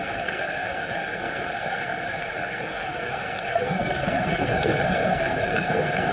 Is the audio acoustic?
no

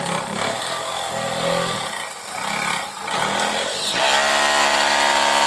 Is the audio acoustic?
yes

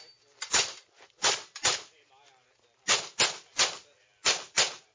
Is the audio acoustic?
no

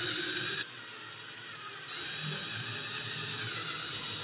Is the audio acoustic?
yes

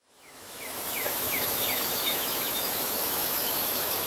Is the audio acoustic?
no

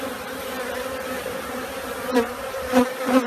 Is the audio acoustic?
no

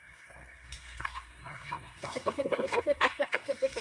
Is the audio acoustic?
no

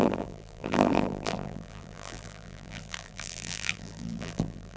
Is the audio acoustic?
no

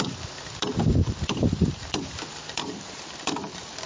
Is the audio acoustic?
yes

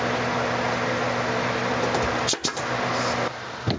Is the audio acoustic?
yes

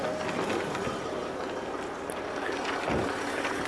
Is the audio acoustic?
yes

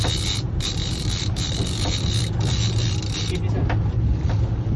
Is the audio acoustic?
yes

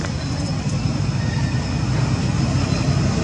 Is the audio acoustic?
yes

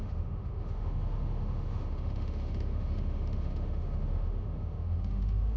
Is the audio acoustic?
no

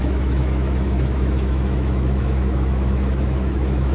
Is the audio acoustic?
no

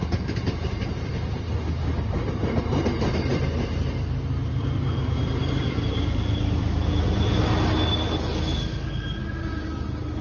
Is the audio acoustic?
yes